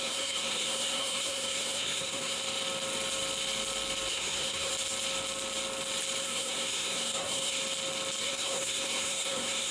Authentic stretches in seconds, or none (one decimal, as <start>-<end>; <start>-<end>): 2.4-4.1; 4.7-6.2; 7.6-8.2